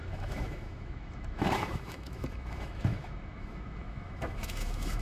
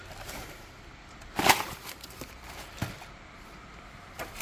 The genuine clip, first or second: second